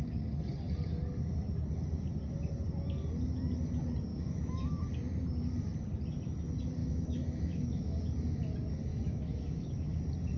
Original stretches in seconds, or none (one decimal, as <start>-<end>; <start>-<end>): 0.0-4.1; 4.8-6.8; 8.0-8.9; 10.0-10.4